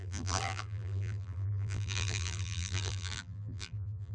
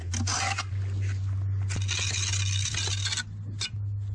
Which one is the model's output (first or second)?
first